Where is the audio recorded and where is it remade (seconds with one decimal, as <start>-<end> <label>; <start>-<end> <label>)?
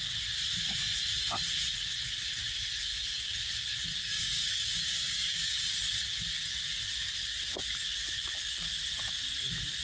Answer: 0.0-4.1 recorded; 4.1-5.6 remade; 5.6-9.8 recorded